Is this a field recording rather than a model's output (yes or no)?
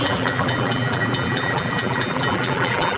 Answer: no